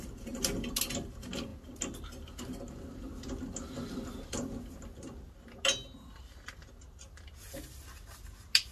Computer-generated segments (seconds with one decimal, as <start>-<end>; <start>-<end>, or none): none